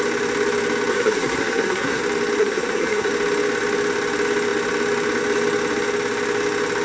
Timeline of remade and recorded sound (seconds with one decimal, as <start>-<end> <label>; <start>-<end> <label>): 0.0-0.9 recorded; 0.9-2.0 remade; 2.0-2.4 recorded; 2.4-3.1 remade; 3.1-6.8 recorded

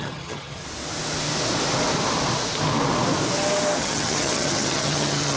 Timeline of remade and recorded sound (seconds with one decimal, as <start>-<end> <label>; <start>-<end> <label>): 0.0-0.6 remade; 0.6-3.8 recorded; 3.8-5.4 remade

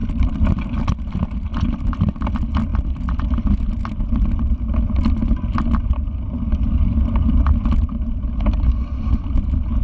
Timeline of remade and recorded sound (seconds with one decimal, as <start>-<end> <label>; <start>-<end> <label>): 0.0-9.8 recorded

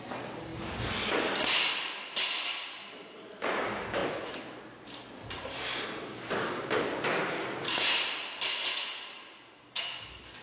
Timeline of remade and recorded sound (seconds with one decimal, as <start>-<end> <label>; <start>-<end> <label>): 0.0-10.4 recorded

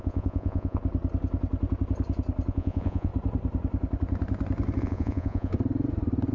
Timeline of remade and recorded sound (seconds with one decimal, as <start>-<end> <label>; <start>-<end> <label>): 0.0-0.8 remade; 0.8-2.5 recorded; 2.5-3.1 remade; 3.1-4.8 recorded; 4.8-5.5 remade; 5.5-6.3 recorded

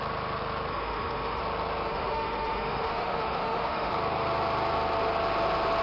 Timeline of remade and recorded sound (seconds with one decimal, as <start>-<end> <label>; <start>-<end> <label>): 0.0-0.7 recorded; 0.7-1.4 remade; 1.4-1.9 recorded; 1.9-3.9 remade; 3.9-5.8 recorded

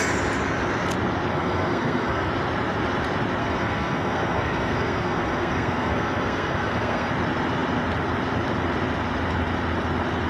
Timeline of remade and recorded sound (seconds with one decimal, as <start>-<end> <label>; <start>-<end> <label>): 0.0-1.3 recorded; 1.3-2.3 remade; 2.3-3.4 recorded; 3.4-7.1 remade; 7.1-10.3 recorded